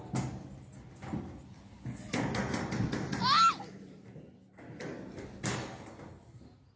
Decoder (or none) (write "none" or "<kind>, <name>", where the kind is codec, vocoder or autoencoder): none